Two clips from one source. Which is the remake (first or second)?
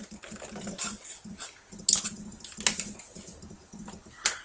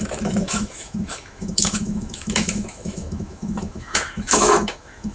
second